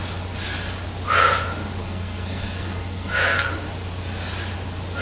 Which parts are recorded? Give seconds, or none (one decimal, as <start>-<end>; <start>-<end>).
0.0-1.8; 3.5-5.0